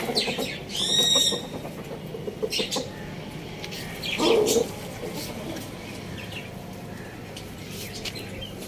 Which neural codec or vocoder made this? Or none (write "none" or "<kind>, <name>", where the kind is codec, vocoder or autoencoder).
none